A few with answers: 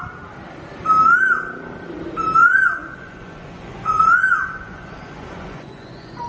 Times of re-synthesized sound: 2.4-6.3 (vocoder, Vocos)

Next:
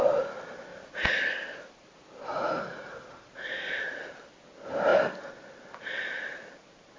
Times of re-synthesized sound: 0.7-1.2 (vocoder, Vocos); 2.3-3.8

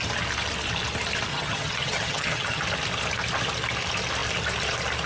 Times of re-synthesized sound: 1.3-2.6 (vocoder, HiFi-GAN)

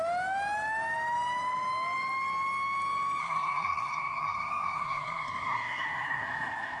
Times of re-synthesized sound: 3.2-6.8 (codec, SNAC)